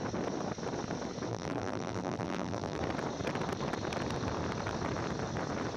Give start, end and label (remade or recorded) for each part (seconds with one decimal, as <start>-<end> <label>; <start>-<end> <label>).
0.0-1.3 recorded; 1.3-2.8 remade; 2.8-5.8 recorded